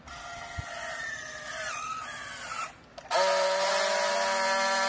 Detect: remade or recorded recorded